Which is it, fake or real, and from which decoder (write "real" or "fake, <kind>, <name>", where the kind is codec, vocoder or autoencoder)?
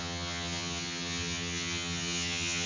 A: fake, vocoder, HiFi-GAN